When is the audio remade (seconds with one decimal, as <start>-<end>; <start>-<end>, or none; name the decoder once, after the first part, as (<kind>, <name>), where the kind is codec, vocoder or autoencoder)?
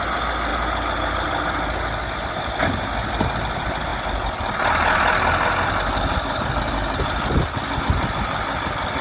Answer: none